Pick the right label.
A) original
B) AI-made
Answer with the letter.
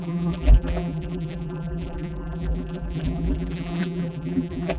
B